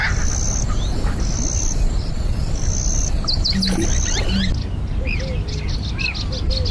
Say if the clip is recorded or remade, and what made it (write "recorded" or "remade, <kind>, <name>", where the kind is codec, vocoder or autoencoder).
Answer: recorded